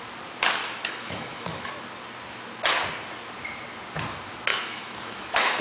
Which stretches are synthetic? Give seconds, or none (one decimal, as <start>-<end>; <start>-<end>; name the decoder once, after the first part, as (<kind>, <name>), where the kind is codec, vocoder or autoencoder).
0.6-1.7 (autoencoder, DAC-VAE); 4.5-5.6

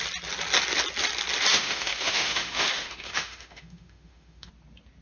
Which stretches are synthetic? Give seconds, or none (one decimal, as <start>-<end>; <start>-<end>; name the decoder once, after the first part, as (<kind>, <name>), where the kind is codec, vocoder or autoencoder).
1.5-4.5 (autoencoder, DAC-VAE)